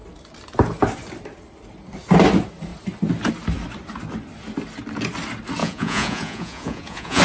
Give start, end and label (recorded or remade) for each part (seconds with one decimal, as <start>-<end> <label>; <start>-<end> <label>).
0.0-5.6 recorded; 5.6-7.2 remade